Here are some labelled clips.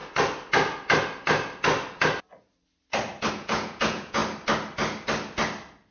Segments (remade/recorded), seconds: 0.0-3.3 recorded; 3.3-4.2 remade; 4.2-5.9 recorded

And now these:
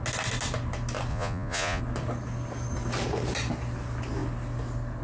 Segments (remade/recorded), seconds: 0.0-1.1 recorded; 1.1-1.8 remade; 1.8-5.0 recorded

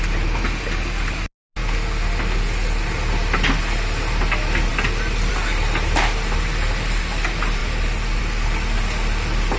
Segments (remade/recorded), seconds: 0.0-9.6 recorded

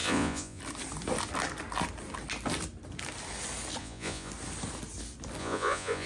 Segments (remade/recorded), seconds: 0.0-0.6 remade; 0.6-3.8 recorded; 3.8-4.3 remade; 4.3-5.4 recorded; 5.4-6.1 remade

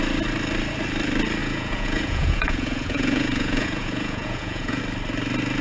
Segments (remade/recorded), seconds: 0.0-1.4 recorded; 1.4-4.8 remade; 4.8-5.6 recorded

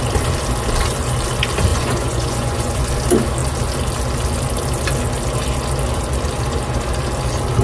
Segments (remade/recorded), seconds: 0.0-1.7 recorded; 1.7-2.9 remade; 2.9-7.6 recorded